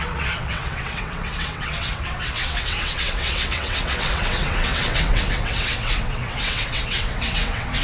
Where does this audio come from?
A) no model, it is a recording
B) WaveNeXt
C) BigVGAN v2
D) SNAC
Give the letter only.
B